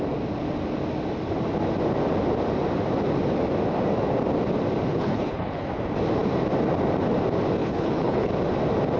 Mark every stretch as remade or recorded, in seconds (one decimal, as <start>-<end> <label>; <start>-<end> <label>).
0.0-4.9 recorded; 4.9-5.7 remade; 5.7-7.6 recorded; 7.6-8.3 remade; 8.3-9.0 recorded